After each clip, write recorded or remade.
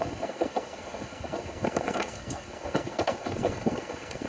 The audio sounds remade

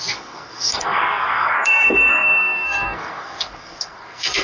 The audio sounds remade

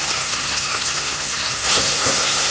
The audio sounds remade